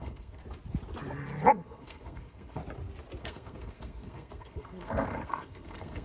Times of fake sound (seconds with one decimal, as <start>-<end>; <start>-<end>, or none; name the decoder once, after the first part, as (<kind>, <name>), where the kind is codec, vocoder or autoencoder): 0.0-0.4 (codec, SNAC); 1.5-2.6; 3.2-6.0